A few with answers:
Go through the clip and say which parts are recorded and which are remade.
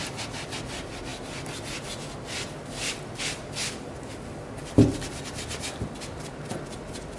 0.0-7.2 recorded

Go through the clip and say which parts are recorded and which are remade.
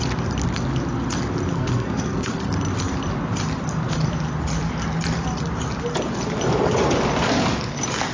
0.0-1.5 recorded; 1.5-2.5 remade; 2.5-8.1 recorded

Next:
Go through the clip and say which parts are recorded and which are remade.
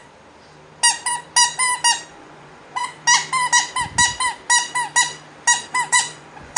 0.0-2.1 recorded; 2.1-2.8 remade; 2.8-5.9 recorded; 5.9-6.6 remade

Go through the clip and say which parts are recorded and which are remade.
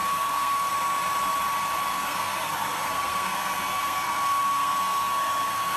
0.0-0.7 remade; 0.7-1.9 recorded; 1.9-5.8 remade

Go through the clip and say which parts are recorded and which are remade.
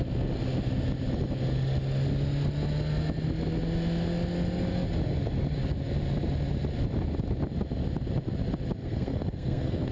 0.0-8.8 recorded; 8.8-9.9 remade